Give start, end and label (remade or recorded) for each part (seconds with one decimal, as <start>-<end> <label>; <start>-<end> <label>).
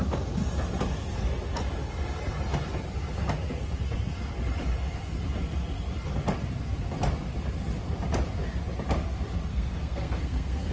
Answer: 0.0-9.5 recorded; 9.5-10.7 remade